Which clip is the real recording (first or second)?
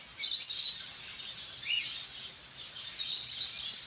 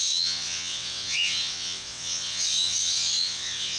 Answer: first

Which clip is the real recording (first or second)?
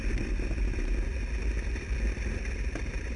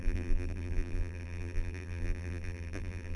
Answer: first